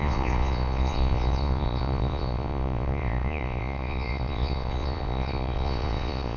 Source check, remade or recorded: remade